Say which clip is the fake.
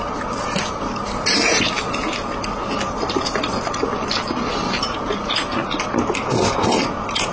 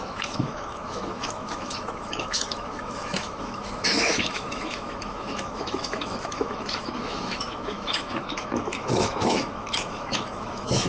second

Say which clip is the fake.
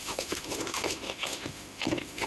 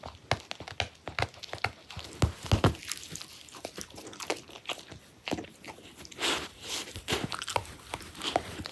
first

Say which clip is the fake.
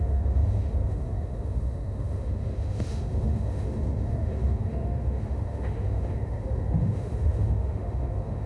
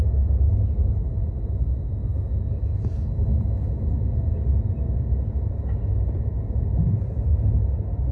first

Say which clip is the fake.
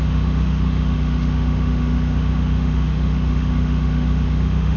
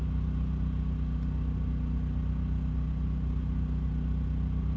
first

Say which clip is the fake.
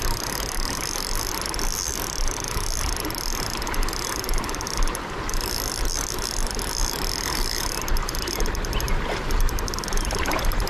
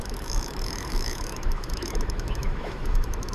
second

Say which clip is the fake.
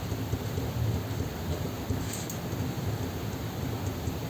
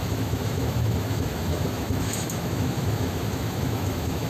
second